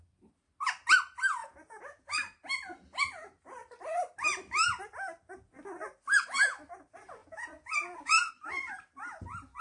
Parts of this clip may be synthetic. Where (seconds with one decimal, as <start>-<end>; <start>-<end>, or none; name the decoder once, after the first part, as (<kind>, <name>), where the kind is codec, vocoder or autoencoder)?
1.4-2.1 (vocoder, Vocos); 7.2-8.3